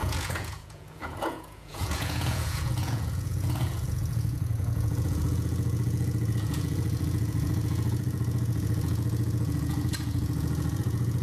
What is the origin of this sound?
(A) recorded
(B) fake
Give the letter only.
B